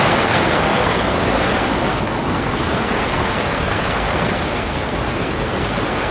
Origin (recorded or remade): remade